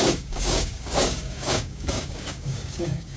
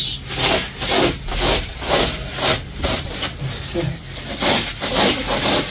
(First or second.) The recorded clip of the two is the second